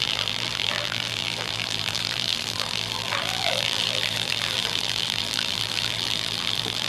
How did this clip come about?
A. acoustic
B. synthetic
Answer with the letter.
B